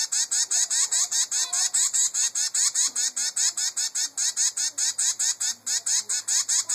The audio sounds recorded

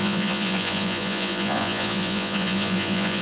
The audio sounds remade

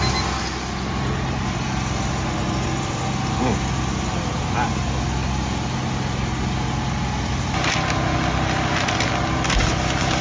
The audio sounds recorded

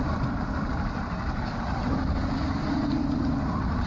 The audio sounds remade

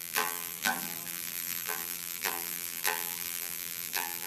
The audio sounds remade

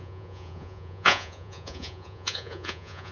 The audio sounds remade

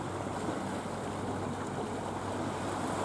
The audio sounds recorded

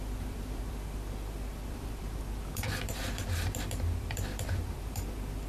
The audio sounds remade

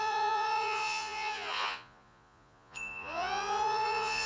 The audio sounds remade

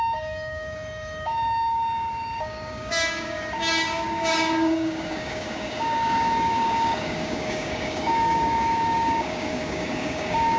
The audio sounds remade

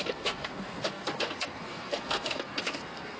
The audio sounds remade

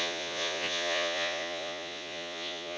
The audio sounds remade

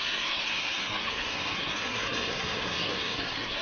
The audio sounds remade